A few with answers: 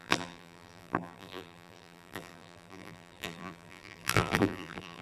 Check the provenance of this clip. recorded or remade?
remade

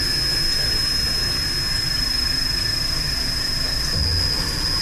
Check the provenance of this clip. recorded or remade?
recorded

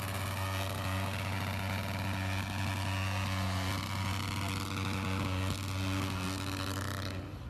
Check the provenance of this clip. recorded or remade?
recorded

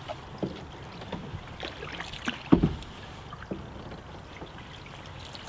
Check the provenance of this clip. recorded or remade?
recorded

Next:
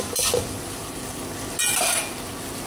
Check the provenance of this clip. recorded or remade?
recorded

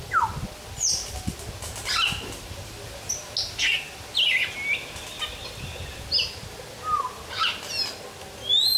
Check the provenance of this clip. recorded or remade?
recorded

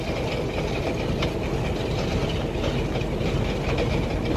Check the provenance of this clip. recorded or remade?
recorded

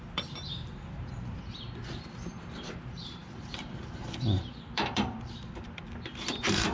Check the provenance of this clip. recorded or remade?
remade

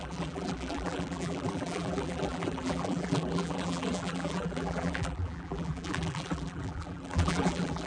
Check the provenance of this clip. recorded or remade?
remade